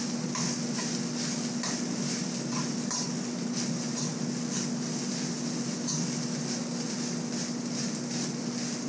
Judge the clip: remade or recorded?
recorded